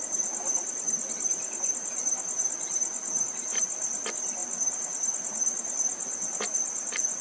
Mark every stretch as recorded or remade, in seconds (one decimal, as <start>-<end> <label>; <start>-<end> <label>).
0.0-7.2 recorded